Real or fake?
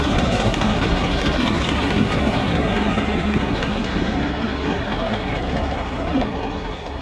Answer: fake